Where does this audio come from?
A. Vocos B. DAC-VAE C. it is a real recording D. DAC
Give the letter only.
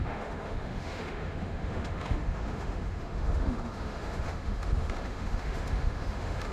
B